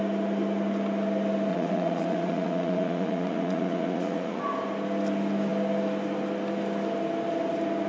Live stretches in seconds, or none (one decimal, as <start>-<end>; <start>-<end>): 0.0-1.5; 4.4-7.9